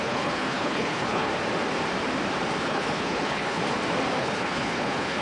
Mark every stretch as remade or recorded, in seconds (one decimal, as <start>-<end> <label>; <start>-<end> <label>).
0.0-1.3 remade; 1.3-2.6 recorded; 2.6-3.6 remade; 3.6-4.2 recorded; 4.2-5.2 remade